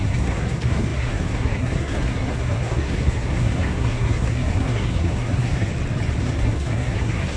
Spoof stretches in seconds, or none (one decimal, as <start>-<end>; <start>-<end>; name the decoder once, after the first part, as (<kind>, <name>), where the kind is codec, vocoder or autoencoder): 0.0-5.7 (codec, SNAC); 6.2-7.4